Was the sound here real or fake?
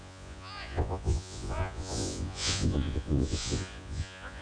fake